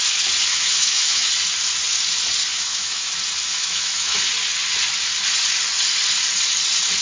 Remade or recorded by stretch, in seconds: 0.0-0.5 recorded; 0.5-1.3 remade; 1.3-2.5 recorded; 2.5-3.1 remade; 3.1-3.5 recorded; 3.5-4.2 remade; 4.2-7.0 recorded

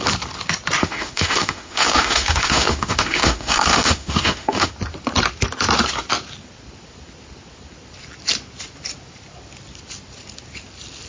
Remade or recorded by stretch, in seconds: 0.0-0.8 recorded; 0.8-4.7 remade; 4.7-11.1 recorded